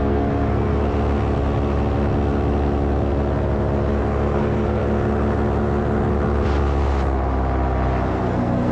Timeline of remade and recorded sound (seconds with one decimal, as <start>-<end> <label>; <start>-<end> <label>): 0.0-0.8 remade; 0.8-4.0 recorded; 4.0-4.8 remade; 4.8-8.1 recorded; 8.1-8.7 remade